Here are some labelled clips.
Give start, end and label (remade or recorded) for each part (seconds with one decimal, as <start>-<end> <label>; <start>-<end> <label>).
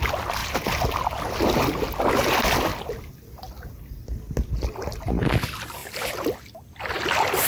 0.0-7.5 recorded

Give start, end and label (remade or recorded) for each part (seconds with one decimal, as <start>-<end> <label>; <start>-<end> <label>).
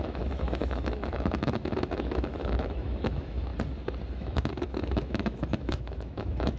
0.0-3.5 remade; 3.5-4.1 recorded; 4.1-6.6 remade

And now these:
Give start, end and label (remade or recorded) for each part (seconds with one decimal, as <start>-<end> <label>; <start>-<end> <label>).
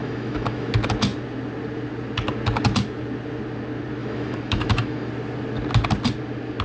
0.0-0.7 remade; 0.7-4.0 recorded; 4.0-5.1 remade; 5.1-6.6 recorded